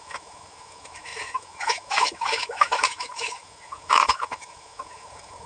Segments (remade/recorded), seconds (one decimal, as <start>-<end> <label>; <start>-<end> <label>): 0.0-5.5 remade